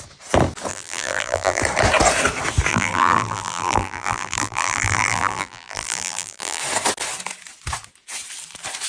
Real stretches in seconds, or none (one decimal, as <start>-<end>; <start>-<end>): 0.0-0.7; 1.6-2.7; 6.6-8.9